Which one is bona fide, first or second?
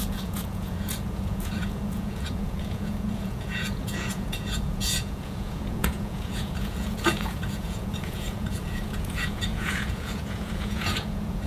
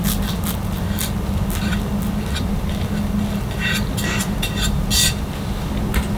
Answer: second